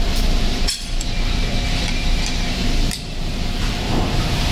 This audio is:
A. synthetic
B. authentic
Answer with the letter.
A